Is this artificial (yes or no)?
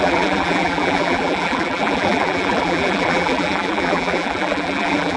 yes